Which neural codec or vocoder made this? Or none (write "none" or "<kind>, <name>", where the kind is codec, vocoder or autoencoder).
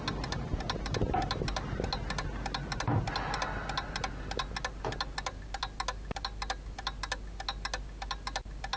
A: none